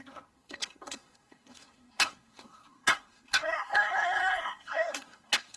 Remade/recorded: remade